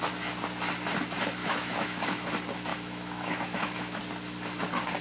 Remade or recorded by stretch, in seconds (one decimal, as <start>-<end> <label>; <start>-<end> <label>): 0.0-1.4 recorded; 1.4-2.3 remade; 2.3-2.7 recorded; 2.7-4.0 remade; 4.0-5.0 recorded